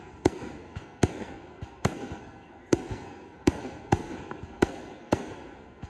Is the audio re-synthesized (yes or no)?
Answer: yes